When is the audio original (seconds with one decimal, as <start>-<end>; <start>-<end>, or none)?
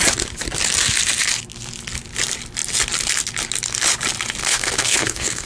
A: 0.0-4.4